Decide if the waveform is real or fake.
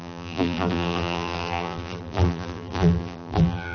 fake